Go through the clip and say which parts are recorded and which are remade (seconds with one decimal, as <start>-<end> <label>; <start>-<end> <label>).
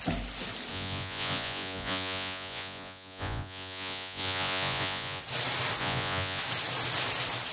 0.0-0.7 recorded; 0.7-5.2 remade; 5.2-5.8 recorded; 5.8-6.4 remade; 6.4-7.5 recorded